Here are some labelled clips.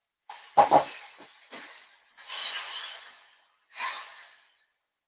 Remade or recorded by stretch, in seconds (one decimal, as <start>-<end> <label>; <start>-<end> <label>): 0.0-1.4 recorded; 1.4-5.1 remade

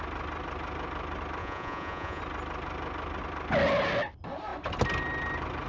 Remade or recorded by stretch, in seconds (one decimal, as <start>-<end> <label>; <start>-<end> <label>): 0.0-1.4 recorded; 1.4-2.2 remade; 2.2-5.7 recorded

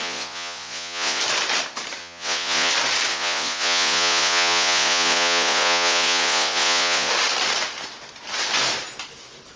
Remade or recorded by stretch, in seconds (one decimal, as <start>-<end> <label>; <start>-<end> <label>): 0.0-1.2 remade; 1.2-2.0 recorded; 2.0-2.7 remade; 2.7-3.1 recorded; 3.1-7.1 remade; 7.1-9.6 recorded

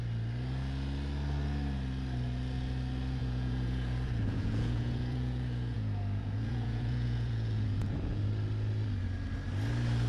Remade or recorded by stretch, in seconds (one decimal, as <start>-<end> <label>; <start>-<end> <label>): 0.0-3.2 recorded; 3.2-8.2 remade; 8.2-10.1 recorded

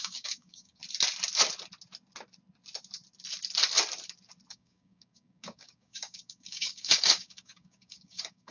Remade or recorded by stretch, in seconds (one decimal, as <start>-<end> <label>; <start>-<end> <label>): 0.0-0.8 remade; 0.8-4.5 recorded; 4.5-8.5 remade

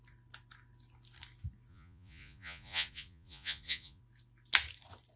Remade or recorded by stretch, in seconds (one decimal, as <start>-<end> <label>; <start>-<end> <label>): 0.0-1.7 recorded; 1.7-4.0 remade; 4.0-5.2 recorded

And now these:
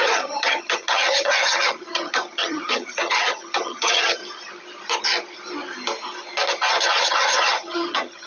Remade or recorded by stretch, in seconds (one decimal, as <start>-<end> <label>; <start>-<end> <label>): 0.0-4.2 remade; 4.2-7.0 recorded; 7.0-8.3 remade

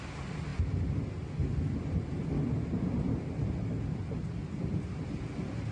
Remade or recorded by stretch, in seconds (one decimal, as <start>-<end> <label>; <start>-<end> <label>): 0.0-5.7 recorded